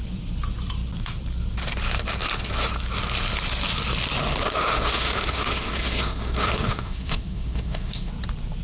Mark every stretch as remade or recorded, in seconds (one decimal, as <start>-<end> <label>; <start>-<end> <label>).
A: 0.0-4.7 recorded; 4.7-8.1 remade; 8.1-8.6 recorded